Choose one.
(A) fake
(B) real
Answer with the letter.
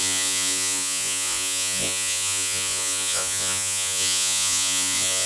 A